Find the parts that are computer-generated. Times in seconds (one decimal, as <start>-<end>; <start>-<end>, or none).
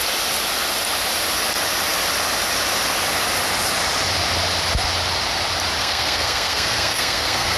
5.8-7.6